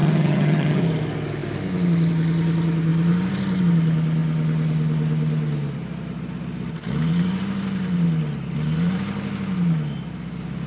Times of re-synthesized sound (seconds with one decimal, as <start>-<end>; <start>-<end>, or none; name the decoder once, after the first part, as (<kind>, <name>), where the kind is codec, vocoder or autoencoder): 0.0-0.8 (vocoder, HiFi-GAN)